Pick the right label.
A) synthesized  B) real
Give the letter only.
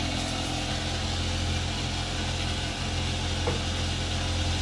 B